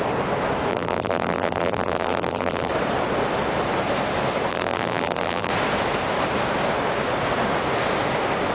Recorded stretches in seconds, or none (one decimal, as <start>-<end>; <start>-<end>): 0.0-0.7; 2.7-4.5; 5.5-8.5